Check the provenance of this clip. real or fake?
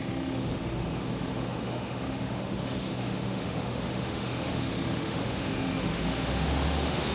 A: fake